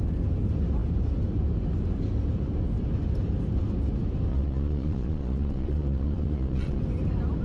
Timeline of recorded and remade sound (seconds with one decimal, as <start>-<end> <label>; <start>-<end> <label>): 0.0-4.3 recorded; 4.3-6.8 remade; 6.8-7.4 recorded